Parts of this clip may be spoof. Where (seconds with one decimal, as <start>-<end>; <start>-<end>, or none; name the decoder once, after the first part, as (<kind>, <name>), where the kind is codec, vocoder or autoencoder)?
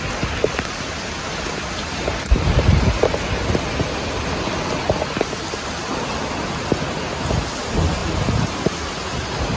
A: 2.1-2.8 (vocoder, BigVGAN v2); 8.0-8.9